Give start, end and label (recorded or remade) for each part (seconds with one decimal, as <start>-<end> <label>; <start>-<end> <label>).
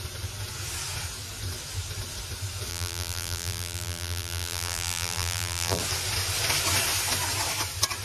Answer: 0.0-2.7 recorded; 2.7-5.8 remade; 5.8-8.0 recorded